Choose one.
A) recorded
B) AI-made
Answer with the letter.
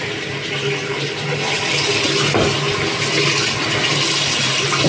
A